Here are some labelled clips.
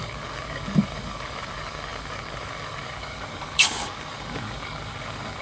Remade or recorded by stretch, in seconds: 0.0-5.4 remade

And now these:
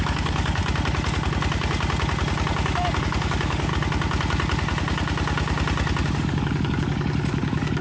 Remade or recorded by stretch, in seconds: 0.0-0.6 remade; 0.6-3.0 recorded; 3.0-3.7 remade; 3.7-6.2 recorded; 6.2-7.8 remade

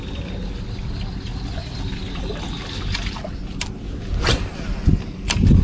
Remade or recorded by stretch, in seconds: 0.0-5.6 recorded

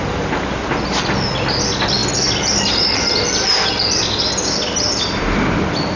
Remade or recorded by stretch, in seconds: 0.0-6.0 recorded

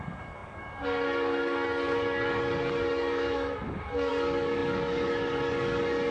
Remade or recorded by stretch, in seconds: 0.0-6.1 remade